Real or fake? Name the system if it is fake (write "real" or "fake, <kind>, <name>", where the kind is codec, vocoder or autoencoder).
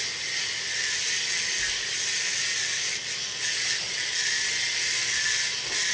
real